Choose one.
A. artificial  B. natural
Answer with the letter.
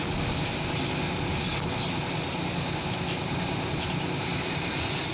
B